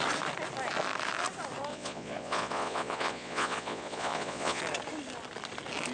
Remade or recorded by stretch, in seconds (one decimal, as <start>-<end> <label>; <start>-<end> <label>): 0.0-1.7 recorded; 1.7-4.6 remade; 4.6-5.9 recorded